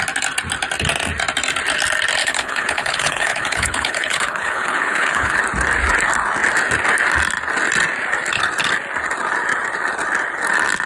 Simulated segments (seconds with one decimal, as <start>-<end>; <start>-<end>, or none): 2.2-5.4